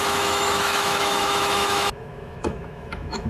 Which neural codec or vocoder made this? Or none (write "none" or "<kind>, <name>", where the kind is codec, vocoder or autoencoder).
autoencoder, DAC-VAE